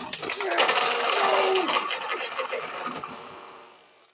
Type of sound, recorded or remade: recorded